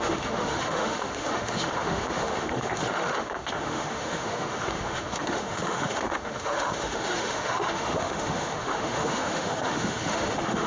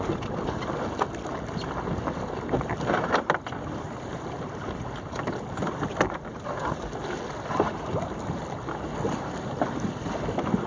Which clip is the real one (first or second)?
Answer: second